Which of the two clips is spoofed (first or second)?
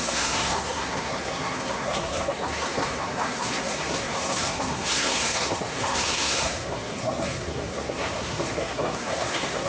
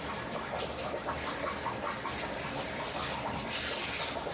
first